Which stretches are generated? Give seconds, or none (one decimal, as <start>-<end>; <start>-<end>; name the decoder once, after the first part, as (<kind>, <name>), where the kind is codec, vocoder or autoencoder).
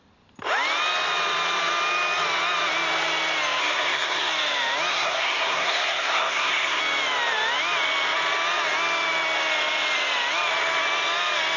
3.6-4.3 (codec, SNAC); 4.9-6.8